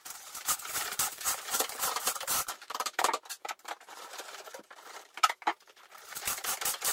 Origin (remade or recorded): remade